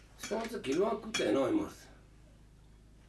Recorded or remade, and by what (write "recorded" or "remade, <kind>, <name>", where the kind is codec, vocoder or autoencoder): recorded